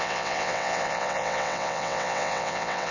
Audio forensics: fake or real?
fake